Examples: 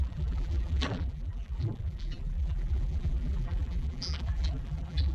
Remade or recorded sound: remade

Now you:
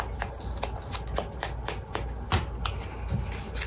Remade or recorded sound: recorded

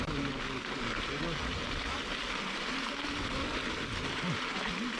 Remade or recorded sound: recorded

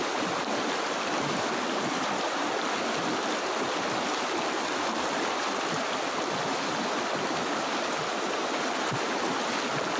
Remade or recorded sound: recorded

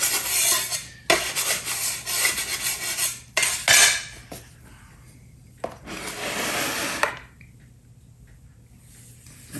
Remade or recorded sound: recorded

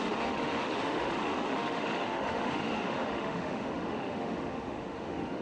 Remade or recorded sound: remade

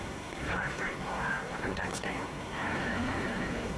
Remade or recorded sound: remade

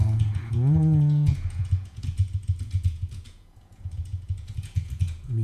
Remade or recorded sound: remade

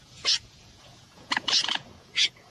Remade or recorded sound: remade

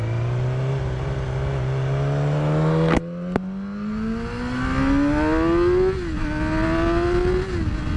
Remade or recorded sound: recorded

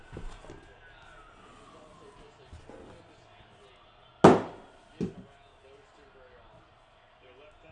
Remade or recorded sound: recorded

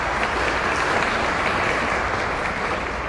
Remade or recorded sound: recorded